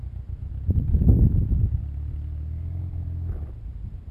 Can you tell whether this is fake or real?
real